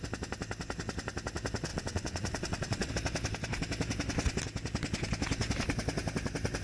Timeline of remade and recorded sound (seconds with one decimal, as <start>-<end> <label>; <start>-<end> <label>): 0.0-1.7 recorded; 1.7-2.9 remade; 2.9-6.6 recorded